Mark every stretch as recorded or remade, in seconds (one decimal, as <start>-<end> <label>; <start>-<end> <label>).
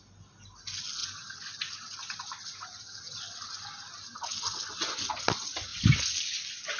0.0-6.8 recorded